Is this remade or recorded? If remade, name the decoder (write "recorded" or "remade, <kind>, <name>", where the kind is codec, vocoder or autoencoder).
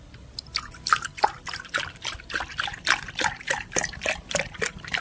remade, vocoder, BigVGAN v2